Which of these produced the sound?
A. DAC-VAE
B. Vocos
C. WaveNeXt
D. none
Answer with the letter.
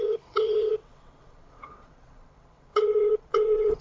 C